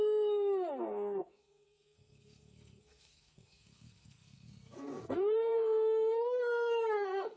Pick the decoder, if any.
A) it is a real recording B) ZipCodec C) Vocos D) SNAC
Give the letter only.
D